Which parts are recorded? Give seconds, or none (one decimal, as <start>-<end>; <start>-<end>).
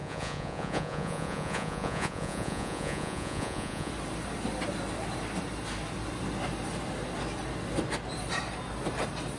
3.9-9.4